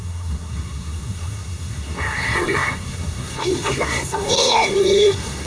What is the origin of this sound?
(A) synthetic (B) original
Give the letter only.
A